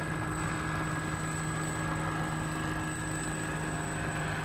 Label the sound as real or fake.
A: real